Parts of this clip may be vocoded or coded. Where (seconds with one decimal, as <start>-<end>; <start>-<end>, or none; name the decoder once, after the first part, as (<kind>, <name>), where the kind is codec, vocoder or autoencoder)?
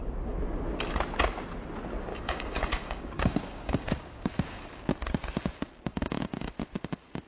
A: 2.1-4.8 (codec, DAC); 5.9-6.5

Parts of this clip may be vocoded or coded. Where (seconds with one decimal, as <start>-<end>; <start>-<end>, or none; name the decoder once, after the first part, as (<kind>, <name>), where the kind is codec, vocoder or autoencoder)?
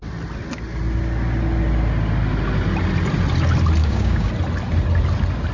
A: 3.8-4.3 (codec, DAC)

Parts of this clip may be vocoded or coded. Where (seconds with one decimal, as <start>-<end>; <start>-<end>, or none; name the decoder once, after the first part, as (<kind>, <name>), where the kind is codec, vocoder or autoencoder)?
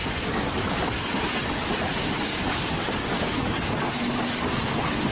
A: none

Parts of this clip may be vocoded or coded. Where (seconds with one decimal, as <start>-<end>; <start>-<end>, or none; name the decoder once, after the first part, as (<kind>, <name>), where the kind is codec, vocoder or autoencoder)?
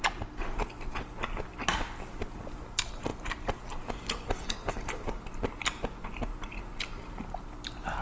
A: none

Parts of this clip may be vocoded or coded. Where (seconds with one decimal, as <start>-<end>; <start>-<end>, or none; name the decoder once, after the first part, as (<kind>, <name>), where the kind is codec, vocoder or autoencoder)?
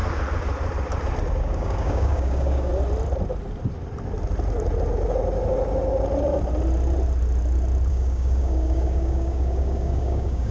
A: 1.4-2.7 (codec, DAC); 7.9-10.5